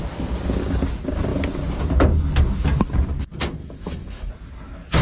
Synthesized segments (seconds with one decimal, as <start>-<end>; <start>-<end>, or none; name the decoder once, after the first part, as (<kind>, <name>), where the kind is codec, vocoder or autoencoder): 3.6-4.3 (autoencoder, DAC-VAE)

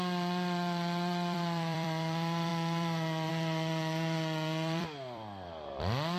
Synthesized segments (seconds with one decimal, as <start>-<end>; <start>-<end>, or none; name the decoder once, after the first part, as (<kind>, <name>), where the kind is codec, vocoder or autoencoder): 0.0-6.2 (vocoder, BigVGAN v2)

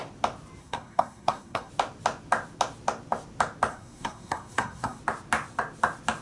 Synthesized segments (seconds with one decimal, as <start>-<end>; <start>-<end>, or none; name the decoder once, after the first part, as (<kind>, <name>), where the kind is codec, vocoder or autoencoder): 0.6-1.7 (codec, SNAC); 3.7-5.0

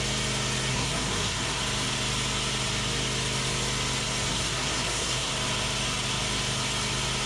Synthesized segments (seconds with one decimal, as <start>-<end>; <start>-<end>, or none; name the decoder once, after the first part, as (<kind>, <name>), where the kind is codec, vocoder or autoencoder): 0.7-1.6 (codec, SNAC); 4.3-5.3

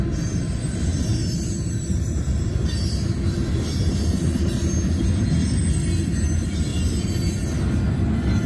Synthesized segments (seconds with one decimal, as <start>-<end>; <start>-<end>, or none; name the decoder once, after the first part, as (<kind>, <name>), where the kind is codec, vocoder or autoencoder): none